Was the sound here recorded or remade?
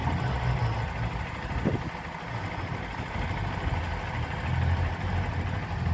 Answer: recorded